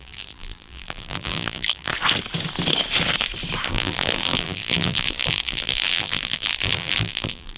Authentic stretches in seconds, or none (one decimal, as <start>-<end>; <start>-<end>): 1.9-3.7

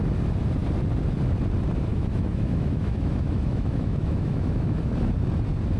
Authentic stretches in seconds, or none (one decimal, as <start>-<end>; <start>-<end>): 0.0-1.9; 4.9-5.8

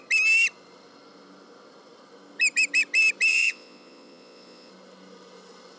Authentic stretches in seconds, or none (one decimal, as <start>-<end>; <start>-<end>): 0.0-3.3; 4.7-5.8

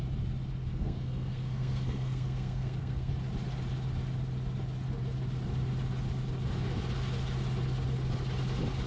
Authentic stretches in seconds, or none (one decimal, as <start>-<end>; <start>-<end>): 0.0-0.7; 3.1-8.9

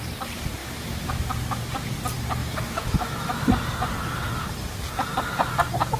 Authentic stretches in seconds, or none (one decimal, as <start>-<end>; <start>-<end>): 0.0-0.6; 1.3-2.4; 3.5-6.0